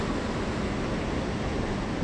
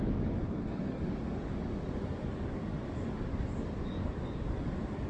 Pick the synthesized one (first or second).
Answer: second